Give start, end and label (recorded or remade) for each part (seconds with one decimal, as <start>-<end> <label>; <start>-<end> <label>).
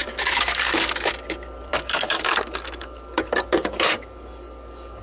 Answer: 0.0-1.1 remade; 1.1-1.7 recorded; 1.7-5.0 remade